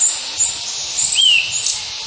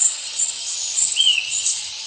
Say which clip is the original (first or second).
first